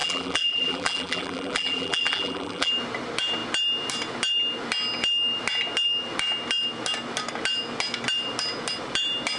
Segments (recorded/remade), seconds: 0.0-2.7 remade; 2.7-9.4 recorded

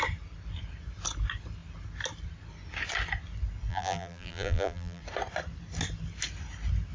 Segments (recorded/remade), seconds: 0.0-3.7 recorded; 3.7-5.0 remade; 5.0-6.9 recorded

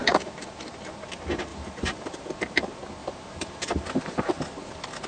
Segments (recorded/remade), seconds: 0.0-0.6 remade; 0.6-1.5 recorded; 1.5-2.3 remade; 2.3-3.0 recorded; 3.0-4.3 remade; 4.3-5.1 recorded